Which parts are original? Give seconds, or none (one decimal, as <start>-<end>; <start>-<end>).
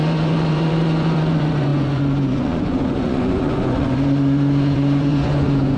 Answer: none